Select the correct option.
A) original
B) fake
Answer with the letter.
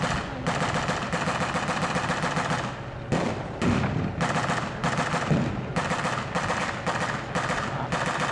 A